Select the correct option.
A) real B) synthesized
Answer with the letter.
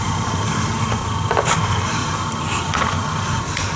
A